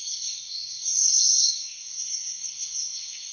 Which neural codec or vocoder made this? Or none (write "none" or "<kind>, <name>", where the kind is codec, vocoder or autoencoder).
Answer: codec, SNAC